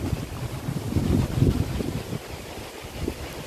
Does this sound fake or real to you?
real